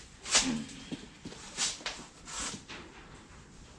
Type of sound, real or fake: real